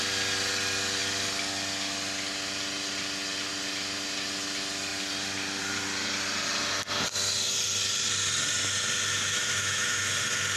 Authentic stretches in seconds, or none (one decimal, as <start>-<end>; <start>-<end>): 0.0-9.3; 10.0-10.6